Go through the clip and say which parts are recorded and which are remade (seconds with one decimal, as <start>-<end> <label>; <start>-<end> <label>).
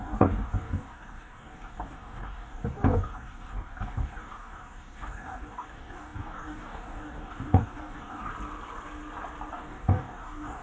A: 0.0-8.3 remade; 8.3-9.5 recorded; 9.5-10.6 remade